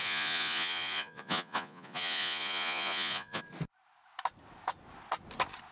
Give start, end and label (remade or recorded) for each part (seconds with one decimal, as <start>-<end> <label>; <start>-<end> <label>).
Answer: 0.0-3.4 remade; 3.4-5.7 recorded

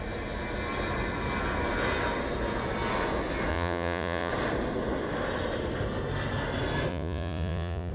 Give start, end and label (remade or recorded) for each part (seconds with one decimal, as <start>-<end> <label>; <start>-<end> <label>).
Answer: 0.0-3.5 recorded; 3.5-4.3 remade; 4.3-6.9 recorded; 6.9-7.9 remade

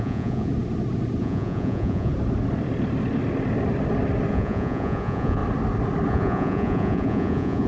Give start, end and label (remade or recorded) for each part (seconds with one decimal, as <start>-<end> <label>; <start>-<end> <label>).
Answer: 0.0-0.5 remade; 0.5-1.2 recorded; 1.2-2.1 remade; 2.1-4.3 recorded; 4.3-5.4 remade; 5.4-6.1 recorded; 6.1-7.7 remade